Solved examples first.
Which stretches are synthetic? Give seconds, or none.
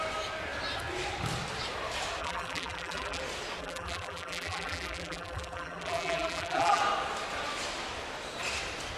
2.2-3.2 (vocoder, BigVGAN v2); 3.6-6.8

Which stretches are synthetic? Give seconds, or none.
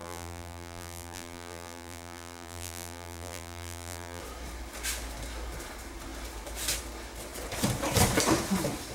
0.0-4.2 (vocoder, BigVGAN v2)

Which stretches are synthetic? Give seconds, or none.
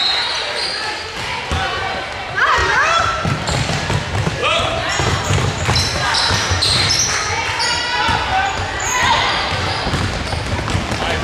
2.6-3.2 (vocoder, BigVGAN v2); 4.4-7.0